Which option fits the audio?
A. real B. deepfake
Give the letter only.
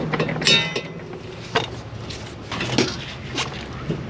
A